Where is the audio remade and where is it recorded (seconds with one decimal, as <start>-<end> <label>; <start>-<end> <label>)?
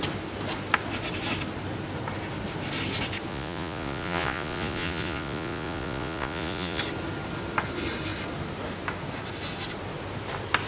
0.0-3.3 recorded; 3.3-6.8 remade; 6.8-10.7 recorded